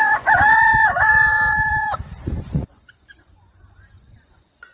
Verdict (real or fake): fake